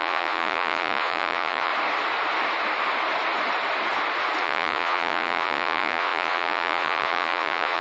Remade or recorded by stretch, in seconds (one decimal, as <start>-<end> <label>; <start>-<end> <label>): 0.0-1.7 remade; 1.7-4.4 recorded; 4.4-7.8 remade